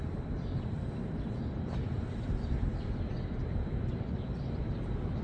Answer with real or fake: fake